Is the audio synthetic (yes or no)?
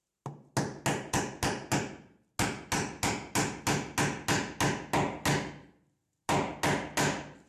no